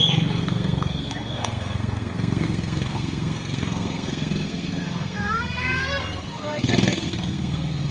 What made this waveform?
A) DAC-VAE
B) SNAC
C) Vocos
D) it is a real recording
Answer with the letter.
B